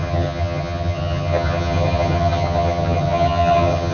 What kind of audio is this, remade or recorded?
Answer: remade